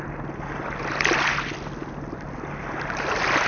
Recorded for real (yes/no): yes